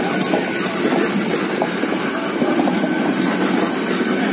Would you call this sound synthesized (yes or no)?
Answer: no